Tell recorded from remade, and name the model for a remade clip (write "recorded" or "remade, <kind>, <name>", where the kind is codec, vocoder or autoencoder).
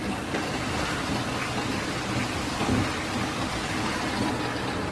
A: recorded